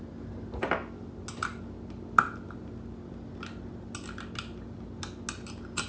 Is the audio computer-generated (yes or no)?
no